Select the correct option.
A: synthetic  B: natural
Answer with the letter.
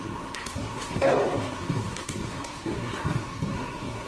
A